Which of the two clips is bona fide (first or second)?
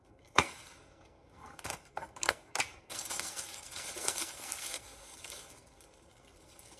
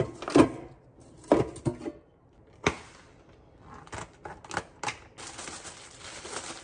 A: second